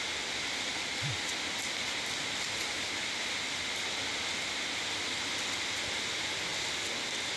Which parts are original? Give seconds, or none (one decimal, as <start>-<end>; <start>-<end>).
0.0-7.4

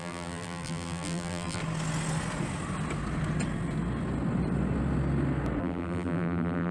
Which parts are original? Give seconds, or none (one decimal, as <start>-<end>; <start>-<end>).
1.6-5.6

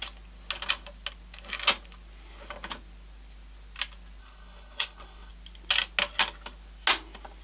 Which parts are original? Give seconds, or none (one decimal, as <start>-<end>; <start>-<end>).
0.0-4.2; 5.3-7.4

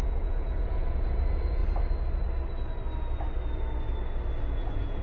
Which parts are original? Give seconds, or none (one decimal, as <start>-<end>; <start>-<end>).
1.6-4.5

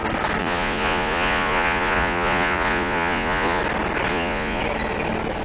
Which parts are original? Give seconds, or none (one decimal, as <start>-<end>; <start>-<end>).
0.0-0.4; 3.6-4.1; 4.6-5.4